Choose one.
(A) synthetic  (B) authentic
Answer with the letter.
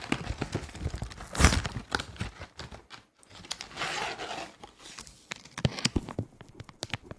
B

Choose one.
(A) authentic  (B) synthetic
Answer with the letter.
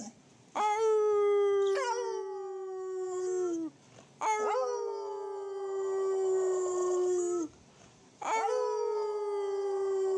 A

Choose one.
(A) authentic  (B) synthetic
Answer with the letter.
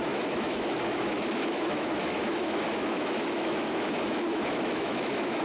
B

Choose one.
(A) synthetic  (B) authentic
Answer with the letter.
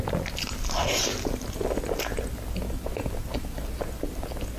B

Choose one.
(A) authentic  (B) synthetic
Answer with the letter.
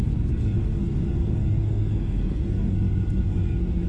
B